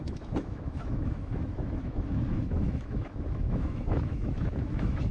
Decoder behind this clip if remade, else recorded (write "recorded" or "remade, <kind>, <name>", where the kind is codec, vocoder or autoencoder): remade, autoencoder, DAC-VAE